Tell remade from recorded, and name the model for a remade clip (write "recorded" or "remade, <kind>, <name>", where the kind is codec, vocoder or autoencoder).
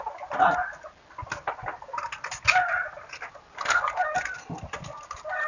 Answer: recorded